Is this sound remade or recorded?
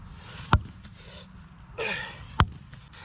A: recorded